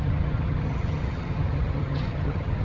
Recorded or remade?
remade